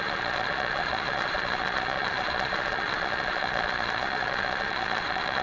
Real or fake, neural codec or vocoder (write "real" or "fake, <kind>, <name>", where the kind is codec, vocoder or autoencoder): fake, vocoder, Vocos